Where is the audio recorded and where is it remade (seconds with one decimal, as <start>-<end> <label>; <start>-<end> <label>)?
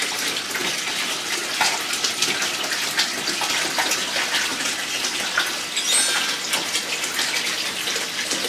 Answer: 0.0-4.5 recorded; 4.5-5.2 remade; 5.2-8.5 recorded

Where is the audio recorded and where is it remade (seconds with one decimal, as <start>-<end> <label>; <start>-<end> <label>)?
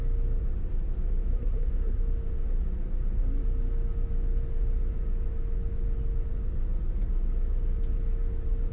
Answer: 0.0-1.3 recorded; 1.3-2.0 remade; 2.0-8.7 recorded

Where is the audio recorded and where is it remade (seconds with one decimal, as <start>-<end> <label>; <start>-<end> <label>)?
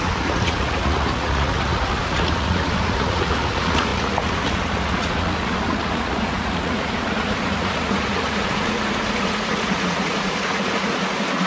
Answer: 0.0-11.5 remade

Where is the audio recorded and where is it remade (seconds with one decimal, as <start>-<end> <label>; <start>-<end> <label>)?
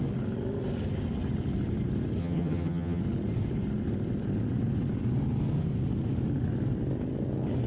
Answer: 0.0-2.2 recorded; 2.2-3.0 remade; 3.0-7.7 recorded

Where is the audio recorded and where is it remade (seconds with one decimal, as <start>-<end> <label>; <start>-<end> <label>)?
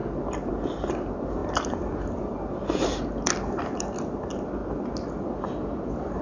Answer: 0.0-1.4 recorded; 1.4-1.9 remade; 1.9-6.2 recorded